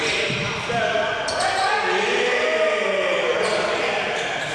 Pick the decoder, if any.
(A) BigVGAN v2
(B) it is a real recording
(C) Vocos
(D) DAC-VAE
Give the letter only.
B